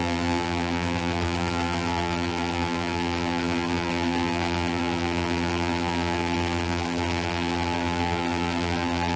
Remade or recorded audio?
remade